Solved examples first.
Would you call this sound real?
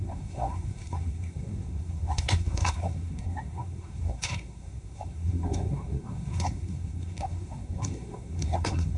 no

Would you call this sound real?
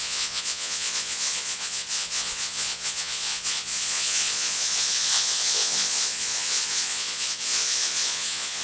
no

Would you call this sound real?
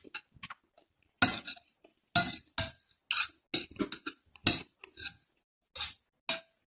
yes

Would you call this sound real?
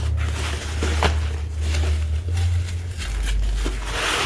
yes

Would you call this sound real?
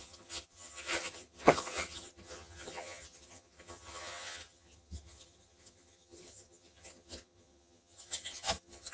no